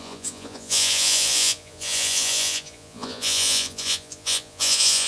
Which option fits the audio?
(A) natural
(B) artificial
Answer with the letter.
B